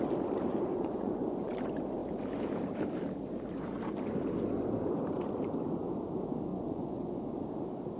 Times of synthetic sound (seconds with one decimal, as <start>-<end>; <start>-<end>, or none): 0.5-1.5; 6.5-7.4